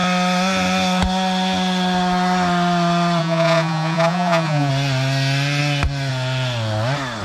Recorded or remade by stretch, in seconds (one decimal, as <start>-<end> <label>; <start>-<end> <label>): 0.0-3.2 recorded; 3.2-4.7 remade; 4.7-7.2 recorded